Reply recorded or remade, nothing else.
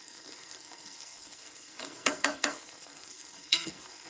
remade